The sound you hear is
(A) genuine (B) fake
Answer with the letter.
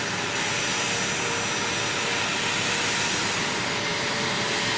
A